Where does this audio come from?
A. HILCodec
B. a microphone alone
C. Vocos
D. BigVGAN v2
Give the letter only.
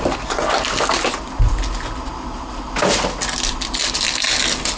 B